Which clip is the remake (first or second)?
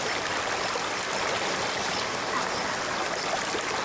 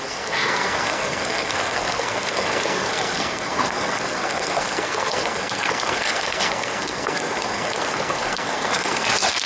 second